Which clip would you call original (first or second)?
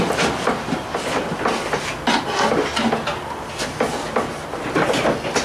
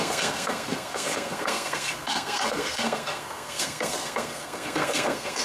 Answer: first